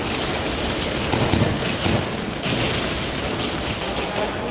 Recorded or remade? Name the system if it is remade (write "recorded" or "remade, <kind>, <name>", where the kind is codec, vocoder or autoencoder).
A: recorded